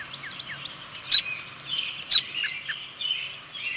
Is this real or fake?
real